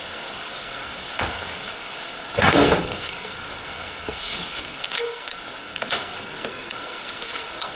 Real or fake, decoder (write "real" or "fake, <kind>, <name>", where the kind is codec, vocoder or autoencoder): fake, codec, SNAC